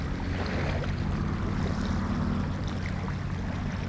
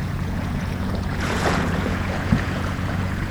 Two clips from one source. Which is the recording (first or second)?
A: first